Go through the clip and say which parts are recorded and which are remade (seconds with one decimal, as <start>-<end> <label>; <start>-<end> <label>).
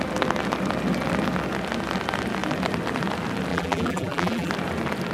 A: 0.0-3.5 recorded; 3.5-4.5 remade; 4.5-5.1 recorded